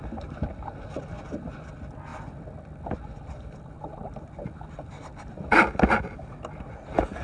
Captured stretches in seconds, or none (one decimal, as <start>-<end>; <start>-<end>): 0.0-7.2